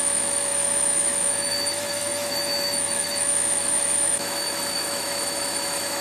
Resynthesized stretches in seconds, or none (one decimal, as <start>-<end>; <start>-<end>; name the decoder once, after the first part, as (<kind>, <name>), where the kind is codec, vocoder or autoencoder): 0.0-6.0 (autoencoder, DAC-VAE)